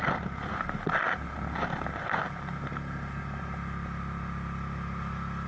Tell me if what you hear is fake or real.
real